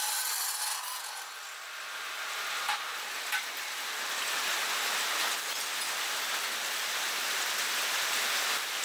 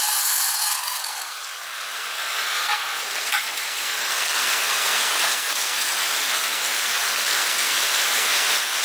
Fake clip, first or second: second